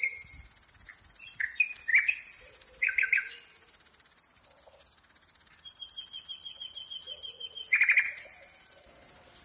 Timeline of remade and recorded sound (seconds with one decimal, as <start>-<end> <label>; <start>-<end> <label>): 0.0-9.4 recorded